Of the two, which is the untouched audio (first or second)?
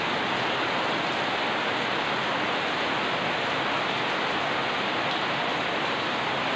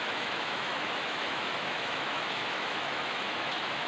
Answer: first